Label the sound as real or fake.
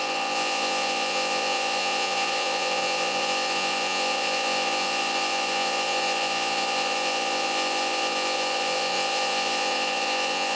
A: fake